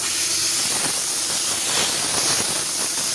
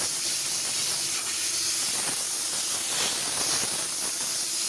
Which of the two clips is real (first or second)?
second